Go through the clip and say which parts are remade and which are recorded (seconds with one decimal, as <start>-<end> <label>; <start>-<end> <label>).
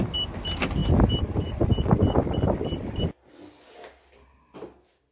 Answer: 0.0-5.1 recorded